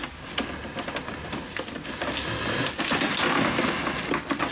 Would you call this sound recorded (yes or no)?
yes